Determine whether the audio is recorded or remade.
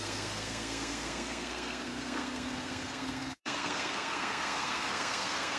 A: remade